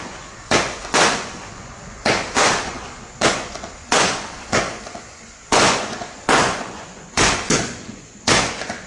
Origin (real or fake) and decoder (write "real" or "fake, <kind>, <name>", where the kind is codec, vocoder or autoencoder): fake, vocoder, Vocos